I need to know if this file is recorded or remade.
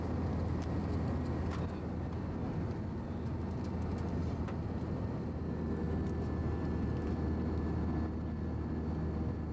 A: recorded